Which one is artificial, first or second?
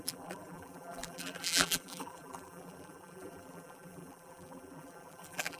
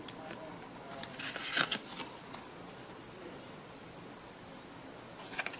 first